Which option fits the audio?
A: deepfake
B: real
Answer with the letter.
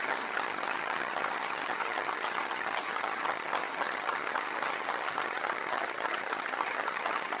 A